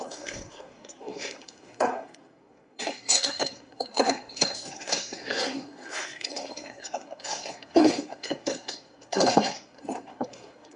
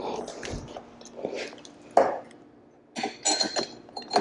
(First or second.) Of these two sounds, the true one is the second